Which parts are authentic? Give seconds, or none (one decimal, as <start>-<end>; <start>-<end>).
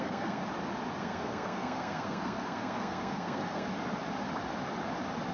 0.4-1.0; 3.7-5.3